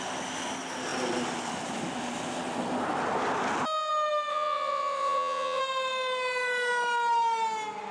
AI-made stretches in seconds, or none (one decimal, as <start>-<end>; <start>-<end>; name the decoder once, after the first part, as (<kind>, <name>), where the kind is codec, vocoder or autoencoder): 4.3-5.6 (vocoder, WaveNeXt)